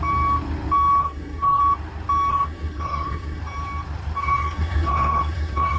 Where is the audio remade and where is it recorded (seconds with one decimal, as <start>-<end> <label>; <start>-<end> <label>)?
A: 0.0-1.0 recorded; 1.0-1.6 remade; 1.6-2.3 recorded; 2.3-3.4 remade; 3.4-4.2 recorded; 4.2-5.8 remade